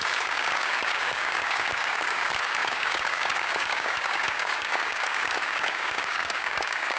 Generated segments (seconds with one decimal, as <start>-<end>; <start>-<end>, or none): 0.0-7.0